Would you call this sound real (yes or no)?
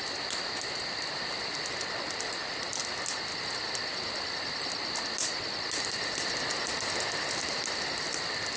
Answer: yes